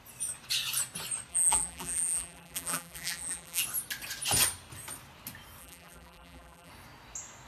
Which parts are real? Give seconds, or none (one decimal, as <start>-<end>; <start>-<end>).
0.0-1.3; 3.6-5.6; 6.7-7.5